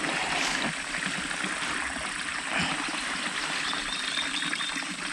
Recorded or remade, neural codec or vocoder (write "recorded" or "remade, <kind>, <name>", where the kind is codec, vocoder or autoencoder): recorded